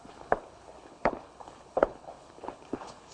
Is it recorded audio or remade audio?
remade